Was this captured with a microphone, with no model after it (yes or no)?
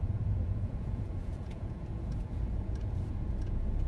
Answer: no